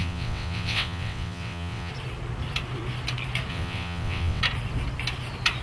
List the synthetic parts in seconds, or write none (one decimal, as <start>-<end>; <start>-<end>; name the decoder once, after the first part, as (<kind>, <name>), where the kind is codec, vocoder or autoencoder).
0.0-1.9 (vocoder, WaveNeXt); 3.5-4.4